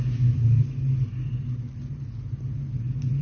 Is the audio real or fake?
real